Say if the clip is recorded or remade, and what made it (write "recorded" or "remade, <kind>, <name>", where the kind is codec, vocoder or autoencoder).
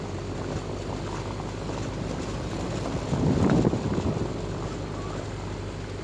recorded